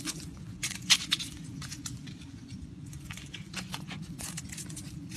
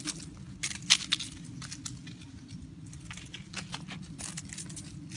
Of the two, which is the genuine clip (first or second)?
second